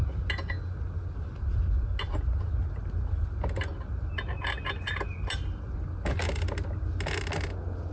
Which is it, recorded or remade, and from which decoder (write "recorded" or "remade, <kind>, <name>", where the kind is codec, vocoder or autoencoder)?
recorded